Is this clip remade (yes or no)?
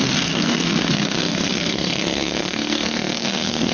yes